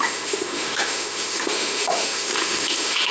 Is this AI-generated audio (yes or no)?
yes